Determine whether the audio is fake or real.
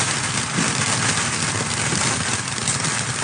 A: real